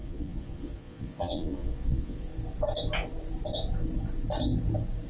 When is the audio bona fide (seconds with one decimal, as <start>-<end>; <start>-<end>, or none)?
2.3-5.1